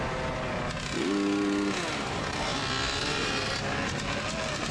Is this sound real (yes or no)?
yes